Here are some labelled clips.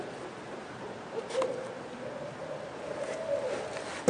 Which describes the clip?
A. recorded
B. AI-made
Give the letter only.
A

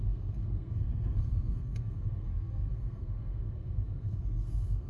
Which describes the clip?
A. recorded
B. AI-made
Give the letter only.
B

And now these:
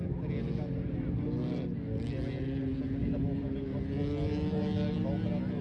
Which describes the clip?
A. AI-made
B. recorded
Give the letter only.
B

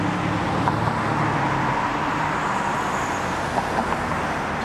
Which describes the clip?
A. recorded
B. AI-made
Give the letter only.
A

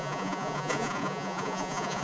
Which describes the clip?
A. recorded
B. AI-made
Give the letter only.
B